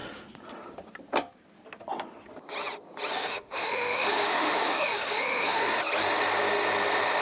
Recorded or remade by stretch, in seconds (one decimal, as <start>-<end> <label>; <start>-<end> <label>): 0.0-3.1 recorded; 3.1-5.8 remade; 5.8-7.2 recorded